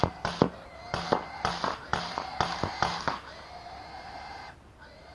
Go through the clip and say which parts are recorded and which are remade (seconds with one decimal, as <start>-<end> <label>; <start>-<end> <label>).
0.0-5.1 recorded